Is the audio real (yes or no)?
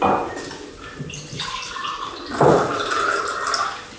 yes